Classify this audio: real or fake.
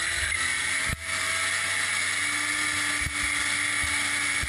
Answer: real